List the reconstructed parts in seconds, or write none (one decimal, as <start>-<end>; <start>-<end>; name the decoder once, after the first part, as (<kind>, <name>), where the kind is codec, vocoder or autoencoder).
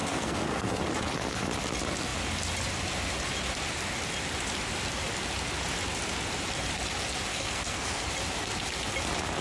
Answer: 0.0-0.8 (codec, SNAC); 7.3-8.1